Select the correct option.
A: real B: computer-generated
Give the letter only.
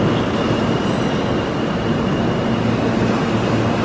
A